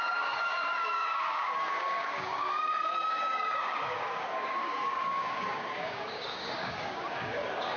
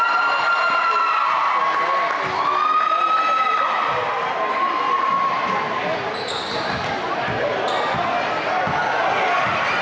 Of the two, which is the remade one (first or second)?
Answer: first